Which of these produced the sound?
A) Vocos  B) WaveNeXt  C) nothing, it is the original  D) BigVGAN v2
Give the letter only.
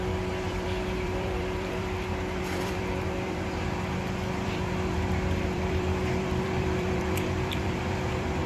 D